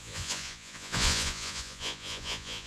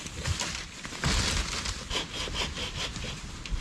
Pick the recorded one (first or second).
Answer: second